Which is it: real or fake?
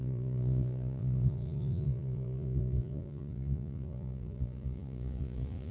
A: fake